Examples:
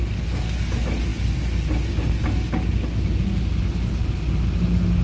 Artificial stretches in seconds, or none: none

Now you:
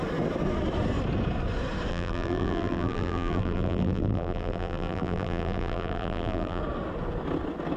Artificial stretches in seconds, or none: 1.9-6.6 (vocoder, BigVGAN v2)

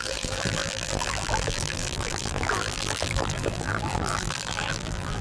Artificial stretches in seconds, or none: 0.0-5.2 (vocoder, BigVGAN v2)

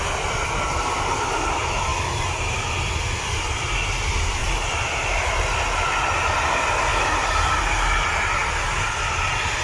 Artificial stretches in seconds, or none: 4.4-5.3 (vocoder, BigVGAN v2); 6.9-7.6

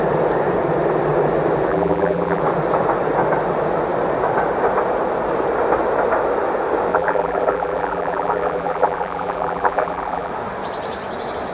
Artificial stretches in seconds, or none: 1.7-2.4 (vocoder, BigVGAN v2); 6.9-10.3